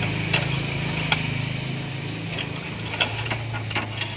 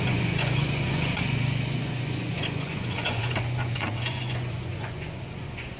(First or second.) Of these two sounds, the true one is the first